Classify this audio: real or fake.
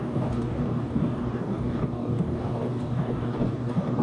fake